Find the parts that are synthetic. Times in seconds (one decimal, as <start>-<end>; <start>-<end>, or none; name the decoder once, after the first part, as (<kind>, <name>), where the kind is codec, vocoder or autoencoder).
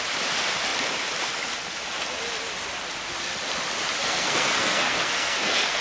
4.0-5.8 (codec, SNAC)